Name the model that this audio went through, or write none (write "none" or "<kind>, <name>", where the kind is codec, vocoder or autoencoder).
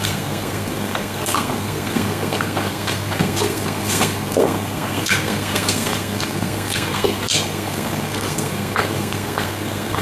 codec, SNAC